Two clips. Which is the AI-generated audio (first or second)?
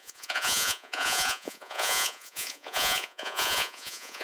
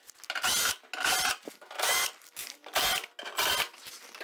first